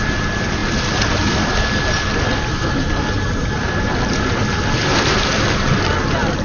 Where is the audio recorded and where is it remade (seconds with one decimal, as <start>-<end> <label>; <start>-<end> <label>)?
0.0-0.6 recorded; 0.6-1.8 remade; 1.8-6.4 recorded